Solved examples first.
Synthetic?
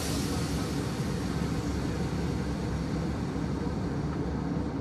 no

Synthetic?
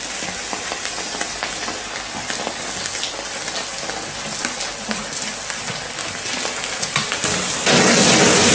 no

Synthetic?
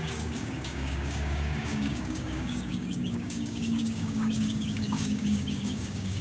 yes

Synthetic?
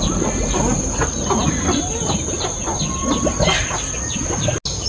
no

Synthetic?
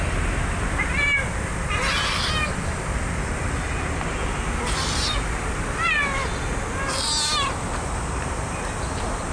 no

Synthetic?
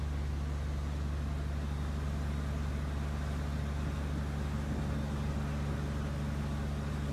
no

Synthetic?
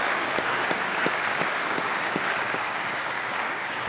yes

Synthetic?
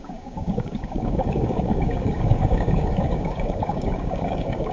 yes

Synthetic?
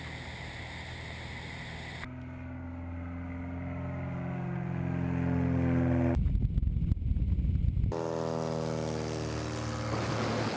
no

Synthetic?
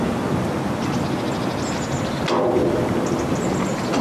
no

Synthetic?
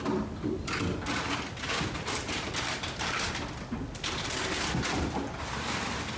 no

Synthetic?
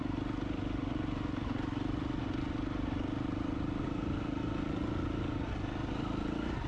no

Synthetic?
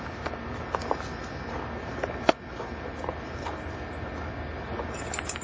no